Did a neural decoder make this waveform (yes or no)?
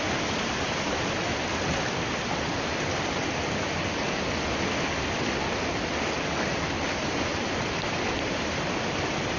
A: no